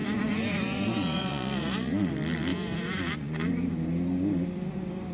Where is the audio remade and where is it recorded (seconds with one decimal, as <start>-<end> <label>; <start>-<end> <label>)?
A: 0.0-2.1 remade; 2.1-2.5 recorded; 2.5-3.5 remade; 3.5-5.1 recorded